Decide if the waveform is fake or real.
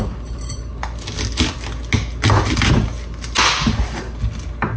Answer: real